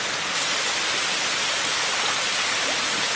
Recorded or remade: recorded